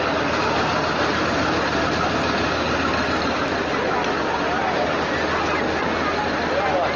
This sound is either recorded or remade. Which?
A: recorded